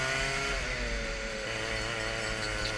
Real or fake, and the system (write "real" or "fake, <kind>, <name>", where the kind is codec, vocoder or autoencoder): real